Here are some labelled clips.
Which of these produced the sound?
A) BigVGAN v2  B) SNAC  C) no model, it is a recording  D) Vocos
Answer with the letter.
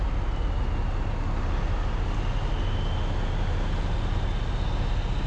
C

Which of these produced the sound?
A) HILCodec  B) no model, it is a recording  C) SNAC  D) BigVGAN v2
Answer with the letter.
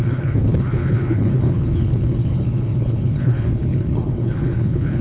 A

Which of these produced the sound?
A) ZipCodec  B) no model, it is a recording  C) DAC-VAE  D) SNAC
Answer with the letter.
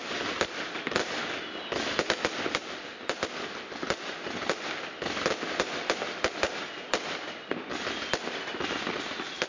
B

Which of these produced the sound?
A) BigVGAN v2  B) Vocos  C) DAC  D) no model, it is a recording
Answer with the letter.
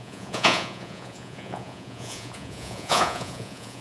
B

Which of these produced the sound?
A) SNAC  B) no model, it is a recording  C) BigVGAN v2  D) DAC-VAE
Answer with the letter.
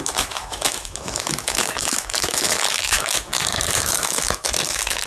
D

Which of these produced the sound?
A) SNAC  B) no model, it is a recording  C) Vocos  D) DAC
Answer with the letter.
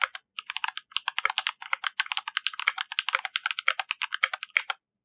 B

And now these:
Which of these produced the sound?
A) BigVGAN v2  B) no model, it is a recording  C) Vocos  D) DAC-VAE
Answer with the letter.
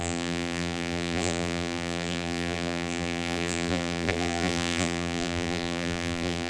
A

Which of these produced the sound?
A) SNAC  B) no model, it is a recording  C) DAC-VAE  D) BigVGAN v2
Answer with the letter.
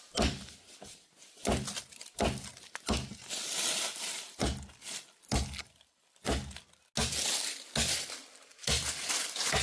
B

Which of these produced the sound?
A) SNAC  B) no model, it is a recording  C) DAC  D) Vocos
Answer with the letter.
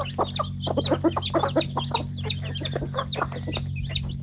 B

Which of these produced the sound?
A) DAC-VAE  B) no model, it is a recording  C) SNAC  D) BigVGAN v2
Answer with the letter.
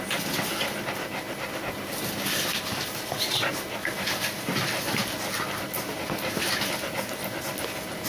B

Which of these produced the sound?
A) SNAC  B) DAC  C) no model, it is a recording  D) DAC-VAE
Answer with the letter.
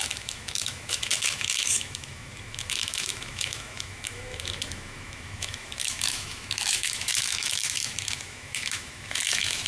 D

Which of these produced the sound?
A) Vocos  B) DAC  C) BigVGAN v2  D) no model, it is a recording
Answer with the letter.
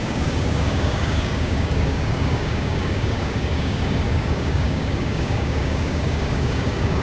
B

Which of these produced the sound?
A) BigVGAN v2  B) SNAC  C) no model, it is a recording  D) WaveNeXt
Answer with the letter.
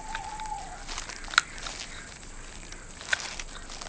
C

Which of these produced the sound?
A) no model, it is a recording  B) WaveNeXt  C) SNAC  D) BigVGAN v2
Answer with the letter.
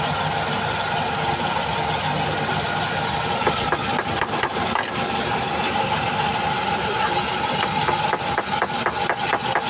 A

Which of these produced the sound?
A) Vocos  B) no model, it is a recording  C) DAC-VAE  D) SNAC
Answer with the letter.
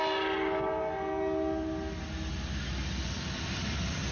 B